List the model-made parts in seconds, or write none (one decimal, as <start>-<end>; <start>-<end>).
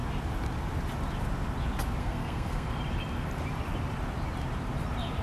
2.0-2.8